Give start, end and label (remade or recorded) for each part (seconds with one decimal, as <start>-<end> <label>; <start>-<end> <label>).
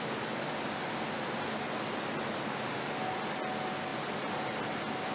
0.0-5.1 recorded